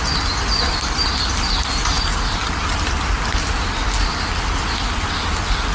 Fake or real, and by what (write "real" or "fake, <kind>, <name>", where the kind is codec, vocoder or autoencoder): real